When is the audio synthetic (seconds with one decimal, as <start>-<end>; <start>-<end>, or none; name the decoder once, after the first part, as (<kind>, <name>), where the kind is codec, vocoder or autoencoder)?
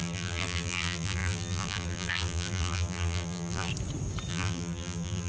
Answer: 0.0-3.7 (vocoder, BigVGAN v2); 4.3-5.3